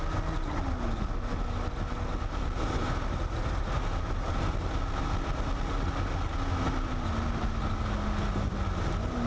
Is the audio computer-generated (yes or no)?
no